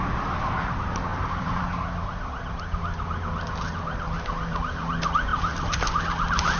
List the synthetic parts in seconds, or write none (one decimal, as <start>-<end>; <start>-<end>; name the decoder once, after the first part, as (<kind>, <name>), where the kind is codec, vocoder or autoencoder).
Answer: 1.1-1.6 (vocoder, BigVGAN v2); 5.3-6.0